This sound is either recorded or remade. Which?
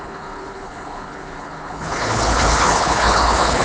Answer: remade